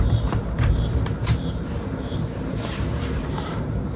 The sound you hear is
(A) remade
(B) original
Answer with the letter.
A